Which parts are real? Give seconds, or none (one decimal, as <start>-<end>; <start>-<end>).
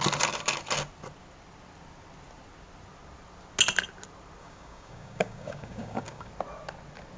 0.0-4.4; 6.3-7.2